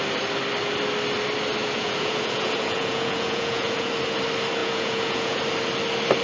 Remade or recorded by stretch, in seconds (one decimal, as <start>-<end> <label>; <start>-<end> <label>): 0.0-1.6 recorded; 1.6-3.9 remade; 3.9-4.6 recorded; 4.6-5.4 remade; 5.4-6.2 recorded